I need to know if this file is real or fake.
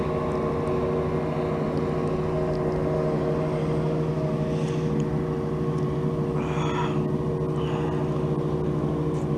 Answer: real